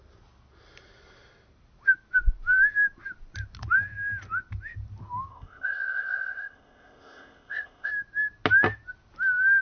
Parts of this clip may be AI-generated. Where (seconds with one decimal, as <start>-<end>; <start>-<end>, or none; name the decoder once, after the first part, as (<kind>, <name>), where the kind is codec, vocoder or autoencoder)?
5.3-7.9 (codec, ZipCodec)